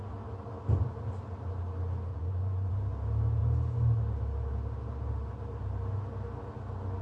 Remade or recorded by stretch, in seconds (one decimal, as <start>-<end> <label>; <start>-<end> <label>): 0.0-2.1 recorded; 2.1-2.7 remade; 2.7-7.0 recorded